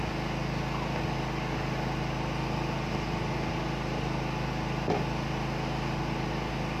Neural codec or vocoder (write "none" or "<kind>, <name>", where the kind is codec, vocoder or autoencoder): none